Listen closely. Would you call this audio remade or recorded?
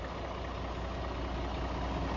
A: recorded